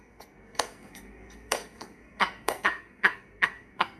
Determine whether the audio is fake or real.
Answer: fake